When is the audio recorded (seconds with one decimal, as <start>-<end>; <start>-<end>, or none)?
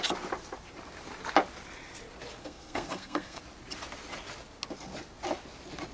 0.0-2.4; 3.4-5.9